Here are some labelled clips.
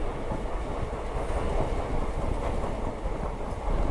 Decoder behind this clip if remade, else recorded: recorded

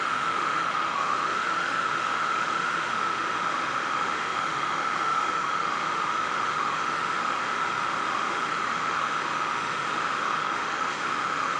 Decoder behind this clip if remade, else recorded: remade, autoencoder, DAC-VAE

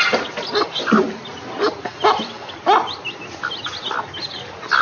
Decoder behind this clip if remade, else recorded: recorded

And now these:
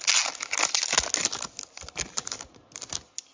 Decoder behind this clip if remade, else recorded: recorded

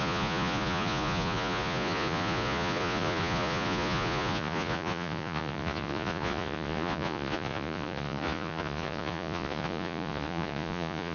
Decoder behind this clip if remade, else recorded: remade, vocoder, Vocos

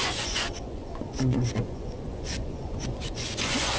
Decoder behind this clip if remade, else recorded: remade, vocoder, Vocos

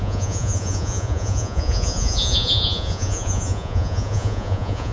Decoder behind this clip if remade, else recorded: remade, vocoder, Vocos